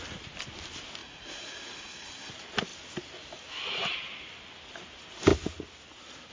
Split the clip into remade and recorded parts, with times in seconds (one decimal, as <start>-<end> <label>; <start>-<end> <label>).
0.0-1.0 recorded; 1.0-2.3 remade; 2.3-6.3 recorded